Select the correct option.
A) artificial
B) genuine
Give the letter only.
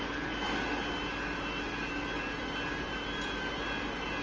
B